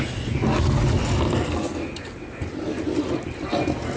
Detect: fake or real real